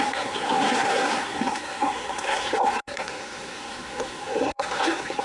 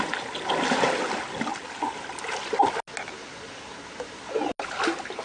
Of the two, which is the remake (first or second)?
first